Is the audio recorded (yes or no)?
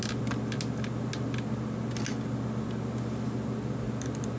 yes